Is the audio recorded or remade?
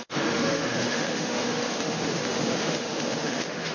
remade